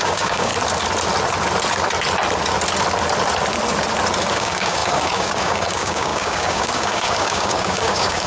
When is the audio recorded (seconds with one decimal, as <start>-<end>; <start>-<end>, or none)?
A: 0.5-4.3